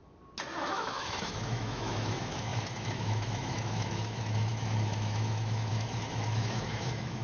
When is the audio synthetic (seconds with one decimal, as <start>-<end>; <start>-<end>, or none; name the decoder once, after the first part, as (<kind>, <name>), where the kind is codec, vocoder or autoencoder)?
0.6-7.2 (autoencoder, DAC-VAE)